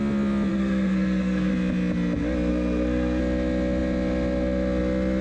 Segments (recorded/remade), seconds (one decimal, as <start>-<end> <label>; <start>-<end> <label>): 0.0-0.5 recorded; 0.5-1.5 remade; 1.5-2.5 recorded; 2.5-3.2 remade; 3.2-5.2 recorded